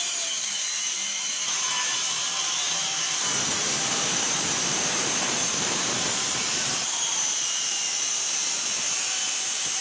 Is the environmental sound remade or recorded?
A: remade